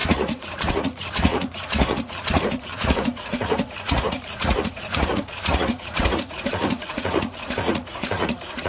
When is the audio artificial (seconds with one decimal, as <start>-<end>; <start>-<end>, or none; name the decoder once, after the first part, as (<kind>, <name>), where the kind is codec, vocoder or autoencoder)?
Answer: 0.0-8.7 (vocoder, Vocos)